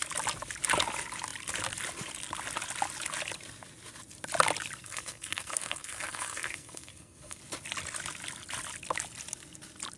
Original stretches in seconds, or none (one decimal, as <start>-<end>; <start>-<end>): 0.0-4.8; 7.4-10.0